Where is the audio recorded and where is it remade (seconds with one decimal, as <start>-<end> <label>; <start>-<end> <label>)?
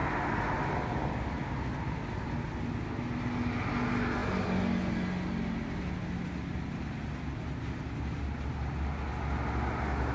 0.0-10.1 recorded